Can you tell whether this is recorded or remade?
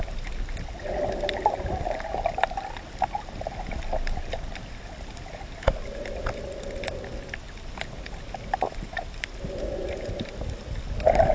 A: recorded